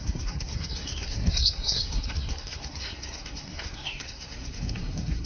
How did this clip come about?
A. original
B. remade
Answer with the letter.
B